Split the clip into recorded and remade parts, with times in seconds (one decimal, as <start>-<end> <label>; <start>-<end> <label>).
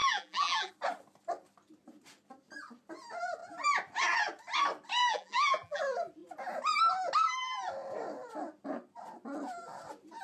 0.0-0.7 remade; 0.7-5.0 recorded; 5.0-5.8 remade; 5.8-10.2 recorded